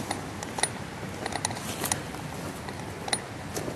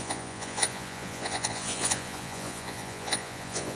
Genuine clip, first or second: first